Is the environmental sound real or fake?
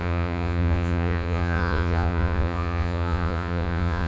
fake